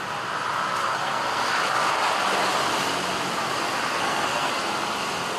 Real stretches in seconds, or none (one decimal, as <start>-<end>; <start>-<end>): 0.0-0.8; 1.5-3.9; 4.5-5.4

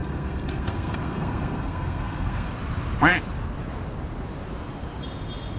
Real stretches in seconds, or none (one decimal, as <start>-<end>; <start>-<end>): 2.5-5.6

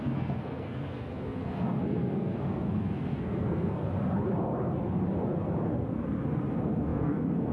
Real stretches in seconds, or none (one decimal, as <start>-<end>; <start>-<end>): 3.8-6.5

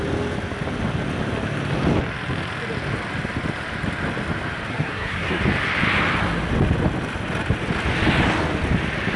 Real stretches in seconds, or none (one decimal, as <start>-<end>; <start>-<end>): 0.0-4.7; 5.4-9.2

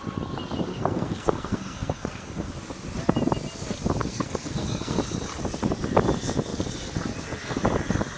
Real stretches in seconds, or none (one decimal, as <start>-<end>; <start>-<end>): 0.0-0.7; 2.5-4.0; 5.0-8.2